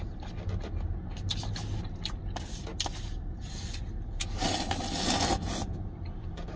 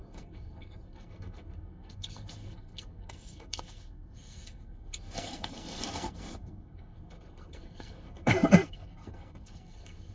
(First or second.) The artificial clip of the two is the second